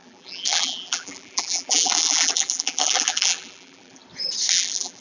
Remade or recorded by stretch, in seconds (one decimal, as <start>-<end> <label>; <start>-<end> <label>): 0.0-4.0 remade; 4.0-4.5 recorded; 4.5-5.0 remade